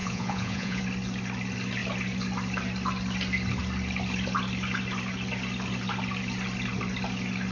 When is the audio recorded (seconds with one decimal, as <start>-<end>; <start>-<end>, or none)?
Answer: 0.8-7.5